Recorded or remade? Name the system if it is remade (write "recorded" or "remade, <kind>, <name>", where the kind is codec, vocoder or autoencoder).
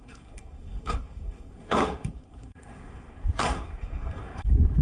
remade, codec, SNAC